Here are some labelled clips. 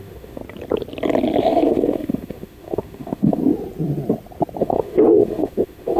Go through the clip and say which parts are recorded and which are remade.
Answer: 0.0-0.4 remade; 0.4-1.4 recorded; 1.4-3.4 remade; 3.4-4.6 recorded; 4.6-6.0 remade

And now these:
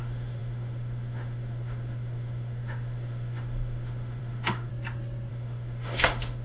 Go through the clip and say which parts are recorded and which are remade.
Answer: 0.0-4.7 remade; 4.7-5.3 recorded; 5.3-6.4 remade

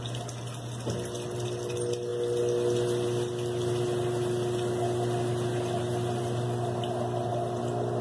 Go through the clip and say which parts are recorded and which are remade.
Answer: 0.0-8.0 recorded

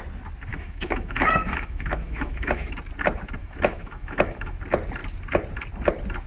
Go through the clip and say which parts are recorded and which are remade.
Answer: 0.0-0.5 recorded; 0.5-2.7 remade; 2.7-3.4 recorded; 3.4-4.6 remade; 4.6-6.3 recorded

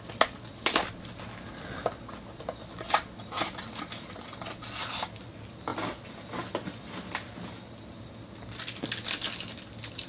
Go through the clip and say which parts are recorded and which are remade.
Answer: 0.0-10.1 recorded

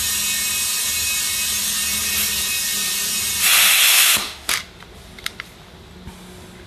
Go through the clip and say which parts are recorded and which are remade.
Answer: 0.0-3.9 recorded; 3.9-4.5 remade; 4.5-6.7 recorded

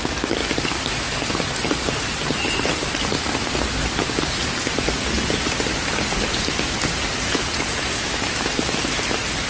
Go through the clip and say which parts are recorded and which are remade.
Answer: 0.0-8.0 recorded; 8.0-9.0 remade; 9.0-9.5 recorded